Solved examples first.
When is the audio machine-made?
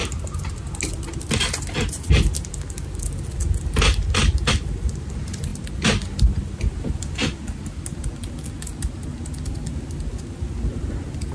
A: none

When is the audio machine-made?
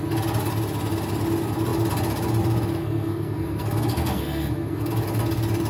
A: 2.8-4.9 (codec, SNAC)